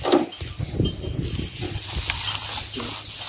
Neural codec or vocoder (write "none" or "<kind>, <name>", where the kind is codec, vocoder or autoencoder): none